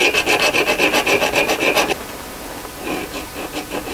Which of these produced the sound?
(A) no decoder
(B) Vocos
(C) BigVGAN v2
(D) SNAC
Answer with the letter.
A